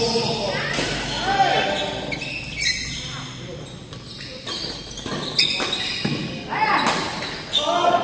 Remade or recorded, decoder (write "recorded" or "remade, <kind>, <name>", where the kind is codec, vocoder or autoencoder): recorded